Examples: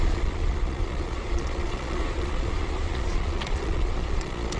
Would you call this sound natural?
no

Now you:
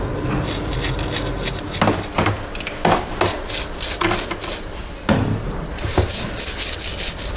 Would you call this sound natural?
yes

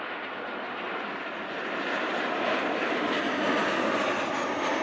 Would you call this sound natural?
yes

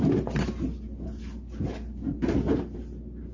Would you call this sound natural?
yes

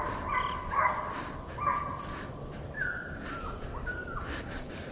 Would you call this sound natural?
yes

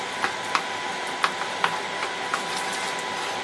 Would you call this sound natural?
yes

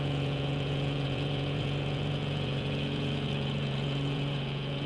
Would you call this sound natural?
no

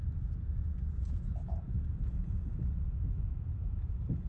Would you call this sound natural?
no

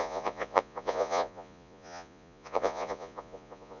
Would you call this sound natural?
no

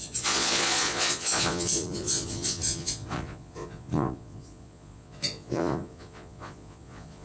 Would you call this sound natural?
no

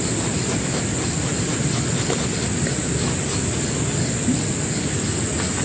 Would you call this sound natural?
yes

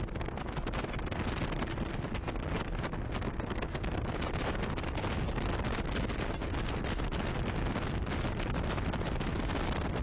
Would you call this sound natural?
yes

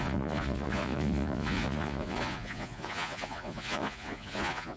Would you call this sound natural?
no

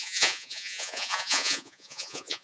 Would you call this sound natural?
no